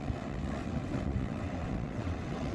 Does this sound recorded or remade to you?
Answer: remade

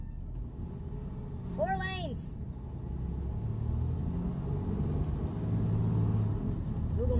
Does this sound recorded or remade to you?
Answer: recorded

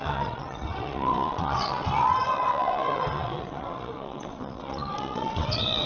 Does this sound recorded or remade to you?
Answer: remade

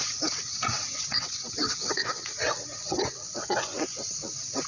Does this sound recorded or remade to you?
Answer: remade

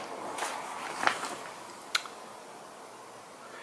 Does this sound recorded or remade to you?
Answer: recorded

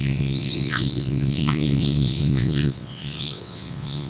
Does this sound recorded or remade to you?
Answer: remade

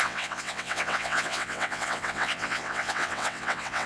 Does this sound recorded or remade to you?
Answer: remade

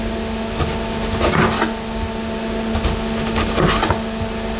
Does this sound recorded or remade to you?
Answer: recorded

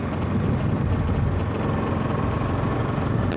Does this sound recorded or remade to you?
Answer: recorded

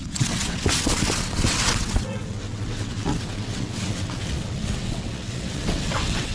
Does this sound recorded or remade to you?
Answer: remade